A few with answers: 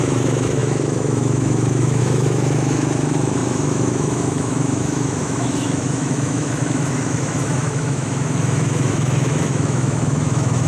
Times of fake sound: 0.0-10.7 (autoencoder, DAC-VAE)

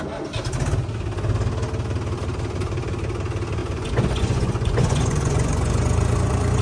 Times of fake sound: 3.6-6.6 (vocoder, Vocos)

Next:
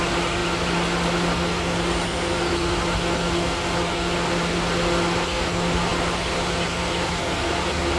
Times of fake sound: none

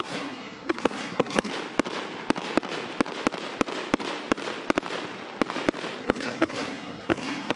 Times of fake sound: 0.0-1.5 (codec, SNAC); 6.0-7.6

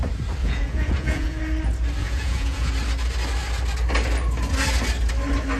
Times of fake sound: 0.4-1.4 (vocoder, Vocos); 2.0-2.7

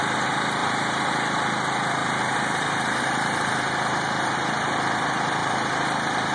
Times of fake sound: 0.6-1.4 (vocoder, BigVGAN v2); 2.0-4.8; 5.4-6.3

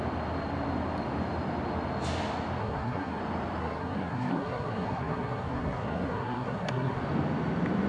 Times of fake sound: 2.6-3.2 (codec, SNAC); 3.6-7.0